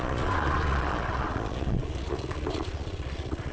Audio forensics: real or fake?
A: fake